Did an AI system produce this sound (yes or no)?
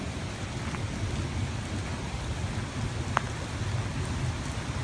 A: no